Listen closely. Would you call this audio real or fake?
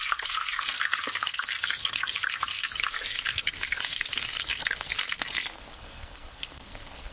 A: fake